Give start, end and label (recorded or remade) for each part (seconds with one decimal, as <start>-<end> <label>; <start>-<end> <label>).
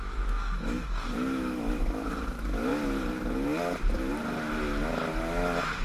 0.0-2.7 remade; 2.7-4.6 recorded; 4.6-5.8 remade